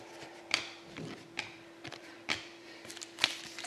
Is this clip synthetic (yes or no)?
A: yes